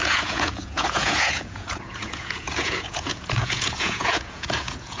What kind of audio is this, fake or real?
fake